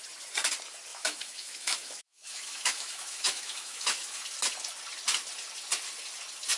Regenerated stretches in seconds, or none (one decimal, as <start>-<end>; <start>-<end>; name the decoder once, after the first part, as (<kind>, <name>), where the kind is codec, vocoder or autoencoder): 0.9-4.2 (autoencoder, DAC-VAE)